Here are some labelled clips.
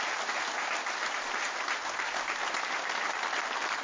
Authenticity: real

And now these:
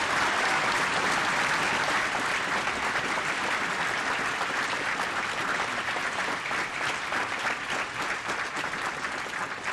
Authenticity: real